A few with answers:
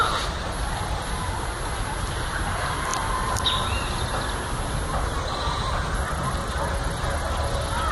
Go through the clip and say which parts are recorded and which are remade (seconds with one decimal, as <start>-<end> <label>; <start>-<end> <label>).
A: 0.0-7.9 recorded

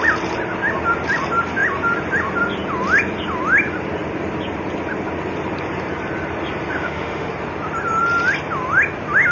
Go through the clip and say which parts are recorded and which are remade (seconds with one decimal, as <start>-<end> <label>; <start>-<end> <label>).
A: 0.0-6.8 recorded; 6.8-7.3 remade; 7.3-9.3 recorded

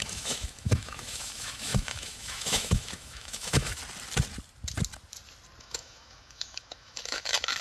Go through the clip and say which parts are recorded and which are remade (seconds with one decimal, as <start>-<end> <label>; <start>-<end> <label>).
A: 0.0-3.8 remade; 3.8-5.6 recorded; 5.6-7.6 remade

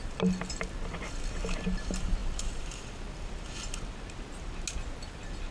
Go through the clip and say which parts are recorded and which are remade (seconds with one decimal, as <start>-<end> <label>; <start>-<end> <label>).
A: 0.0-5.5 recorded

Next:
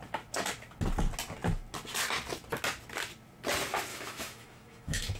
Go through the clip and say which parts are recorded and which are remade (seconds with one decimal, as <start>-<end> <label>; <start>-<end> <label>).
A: 0.0-3.9 recorded; 3.9-5.2 remade